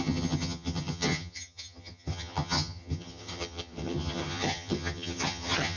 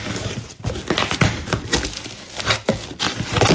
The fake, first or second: first